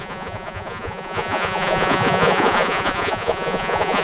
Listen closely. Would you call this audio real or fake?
fake